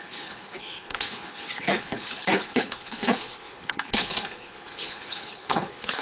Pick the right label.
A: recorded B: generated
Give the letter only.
B